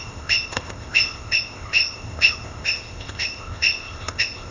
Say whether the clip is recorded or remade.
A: remade